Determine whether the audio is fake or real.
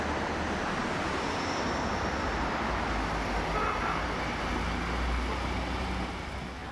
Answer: real